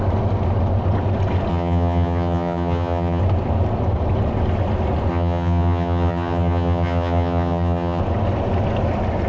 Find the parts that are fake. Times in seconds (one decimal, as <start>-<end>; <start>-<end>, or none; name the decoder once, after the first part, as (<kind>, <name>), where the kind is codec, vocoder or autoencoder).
1.5-3.2 (vocoder, HiFi-GAN); 5.1-8.0